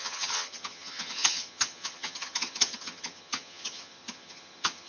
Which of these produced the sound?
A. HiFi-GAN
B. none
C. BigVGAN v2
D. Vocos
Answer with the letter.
A